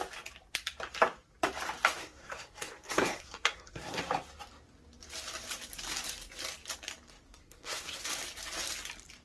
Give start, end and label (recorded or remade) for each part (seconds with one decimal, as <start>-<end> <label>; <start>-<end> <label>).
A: 0.0-2.0 recorded; 2.0-4.0 remade; 4.0-7.4 recorded; 7.4-8.0 remade; 8.0-9.2 recorded